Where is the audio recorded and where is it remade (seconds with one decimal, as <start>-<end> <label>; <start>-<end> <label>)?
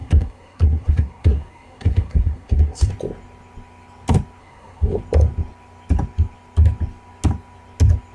0.0-2.9 remade; 2.9-4.4 recorded; 4.4-5.0 remade; 5.0-8.1 recorded